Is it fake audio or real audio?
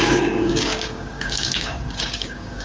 fake